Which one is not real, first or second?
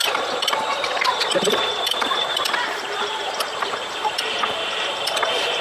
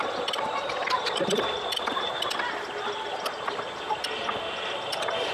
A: first